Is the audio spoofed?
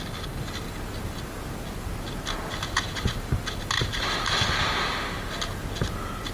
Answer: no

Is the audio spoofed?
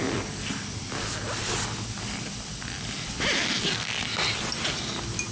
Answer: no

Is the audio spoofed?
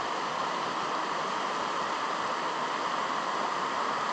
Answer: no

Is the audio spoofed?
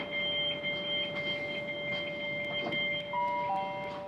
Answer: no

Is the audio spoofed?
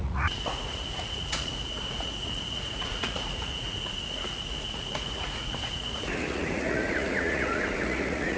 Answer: yes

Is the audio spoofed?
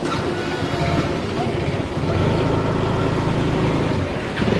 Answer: no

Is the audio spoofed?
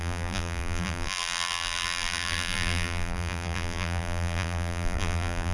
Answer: yes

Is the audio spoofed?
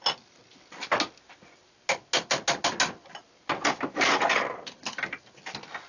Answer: no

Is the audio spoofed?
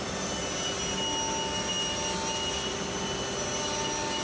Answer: no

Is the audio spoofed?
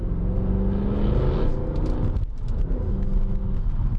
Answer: no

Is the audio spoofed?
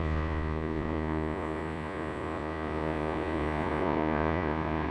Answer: yes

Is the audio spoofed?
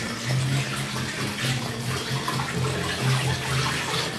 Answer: no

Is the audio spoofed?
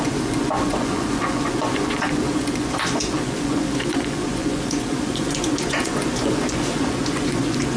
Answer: yes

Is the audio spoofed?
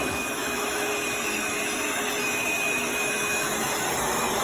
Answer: yes